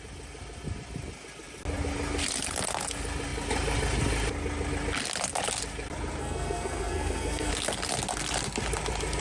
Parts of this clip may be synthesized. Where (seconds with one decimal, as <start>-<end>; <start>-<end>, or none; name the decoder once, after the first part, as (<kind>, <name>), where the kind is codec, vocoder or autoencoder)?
6.2-7.5 (codec, SNAC)